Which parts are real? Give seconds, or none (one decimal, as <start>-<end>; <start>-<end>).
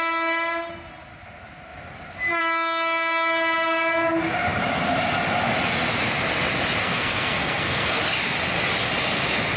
0.0-6.8; 8.0-9.6